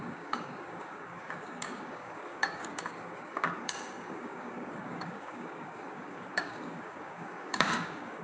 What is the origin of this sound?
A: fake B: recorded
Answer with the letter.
A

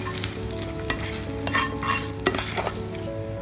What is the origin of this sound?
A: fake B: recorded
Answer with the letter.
B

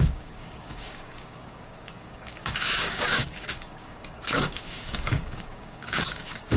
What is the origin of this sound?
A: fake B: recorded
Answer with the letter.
A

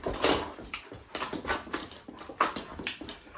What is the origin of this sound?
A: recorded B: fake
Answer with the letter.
A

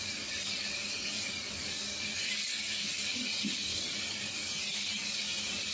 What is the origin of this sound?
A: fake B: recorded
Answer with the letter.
A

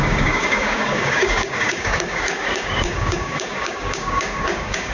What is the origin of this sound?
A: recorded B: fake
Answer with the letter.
B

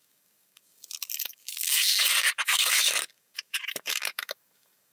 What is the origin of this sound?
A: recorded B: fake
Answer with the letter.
B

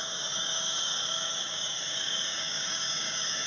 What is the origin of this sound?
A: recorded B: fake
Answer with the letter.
B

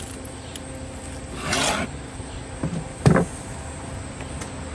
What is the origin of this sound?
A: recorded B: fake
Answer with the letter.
A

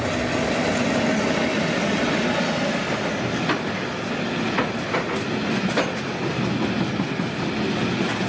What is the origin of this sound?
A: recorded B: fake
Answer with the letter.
A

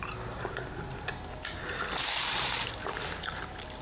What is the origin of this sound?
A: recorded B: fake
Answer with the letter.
A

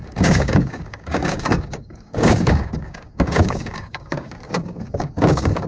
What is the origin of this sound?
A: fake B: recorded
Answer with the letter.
A